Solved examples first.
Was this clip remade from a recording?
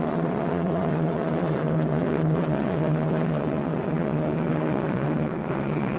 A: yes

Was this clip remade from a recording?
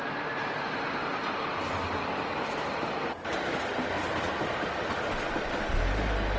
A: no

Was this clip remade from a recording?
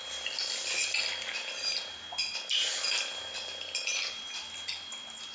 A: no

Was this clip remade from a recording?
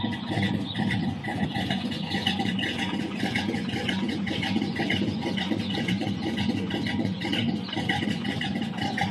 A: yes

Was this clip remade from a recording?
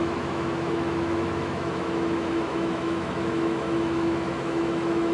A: yes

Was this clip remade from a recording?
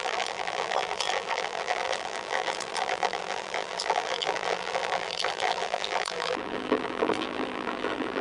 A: yes